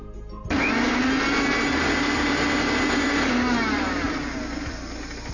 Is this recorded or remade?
recorded